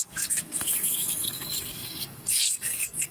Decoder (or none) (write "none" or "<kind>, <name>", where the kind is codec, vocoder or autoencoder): codec, SNAC